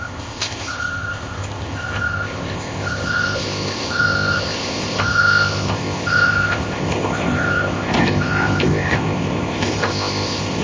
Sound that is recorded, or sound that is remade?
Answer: remade